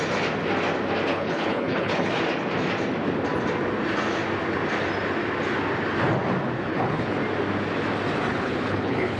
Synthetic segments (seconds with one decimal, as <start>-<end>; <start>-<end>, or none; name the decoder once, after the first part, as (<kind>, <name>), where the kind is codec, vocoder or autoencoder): 1.1-2.2 (codec, HILCodec); 6.7-7.2; 8.3-9.2

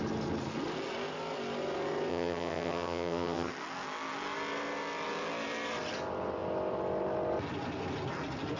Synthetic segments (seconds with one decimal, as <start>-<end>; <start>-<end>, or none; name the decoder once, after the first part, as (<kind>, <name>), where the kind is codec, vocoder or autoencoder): 2.1-3.5 (vocoder, HiFi-GAN)